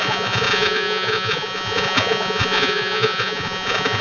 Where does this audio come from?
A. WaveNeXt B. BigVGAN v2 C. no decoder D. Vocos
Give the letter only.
D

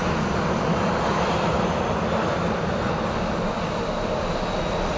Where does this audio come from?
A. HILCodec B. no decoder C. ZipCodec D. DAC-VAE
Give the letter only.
B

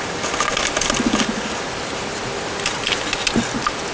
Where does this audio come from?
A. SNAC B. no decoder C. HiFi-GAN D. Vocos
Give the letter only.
B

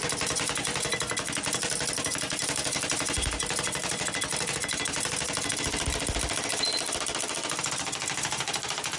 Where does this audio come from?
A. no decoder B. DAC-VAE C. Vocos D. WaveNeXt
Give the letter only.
A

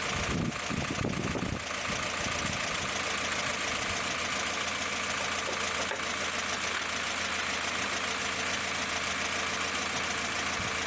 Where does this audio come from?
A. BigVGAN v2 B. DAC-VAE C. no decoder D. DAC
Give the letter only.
C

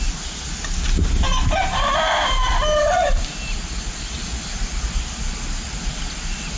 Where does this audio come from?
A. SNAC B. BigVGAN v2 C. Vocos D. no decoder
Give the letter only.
D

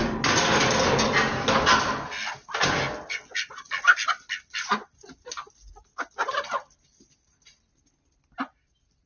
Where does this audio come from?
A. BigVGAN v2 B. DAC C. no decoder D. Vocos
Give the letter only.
C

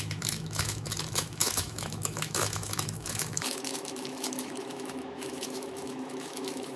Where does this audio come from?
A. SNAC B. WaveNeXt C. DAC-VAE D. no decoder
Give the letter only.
C